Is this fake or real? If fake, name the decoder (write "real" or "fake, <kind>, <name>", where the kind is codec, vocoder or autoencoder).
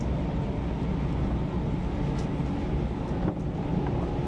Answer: real